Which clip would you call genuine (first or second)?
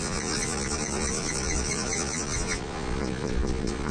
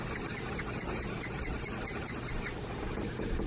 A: second